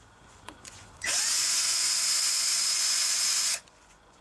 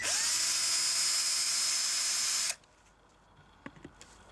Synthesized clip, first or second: first